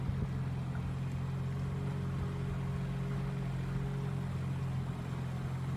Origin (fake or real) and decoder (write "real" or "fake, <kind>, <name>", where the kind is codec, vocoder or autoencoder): real